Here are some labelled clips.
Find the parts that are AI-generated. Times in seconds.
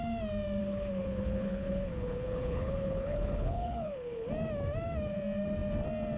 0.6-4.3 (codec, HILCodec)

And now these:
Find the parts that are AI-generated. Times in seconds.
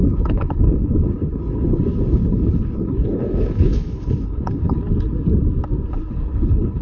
0.0-4.8 (codec, HILCodec); 5.9-6.8